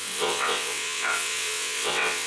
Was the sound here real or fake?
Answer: fake